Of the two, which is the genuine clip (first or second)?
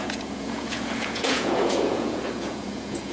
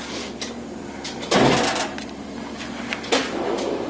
second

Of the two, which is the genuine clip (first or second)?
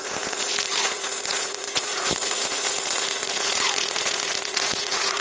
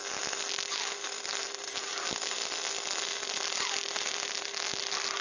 second